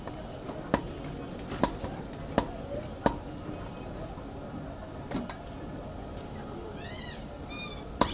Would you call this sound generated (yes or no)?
no